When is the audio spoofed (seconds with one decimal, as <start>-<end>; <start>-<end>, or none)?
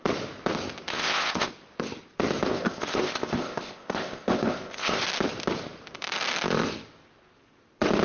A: 0.9-1.5; 2.5-5.0